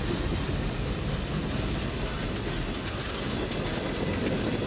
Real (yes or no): yes